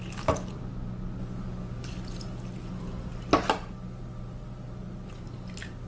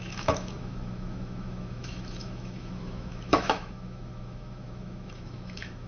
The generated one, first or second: second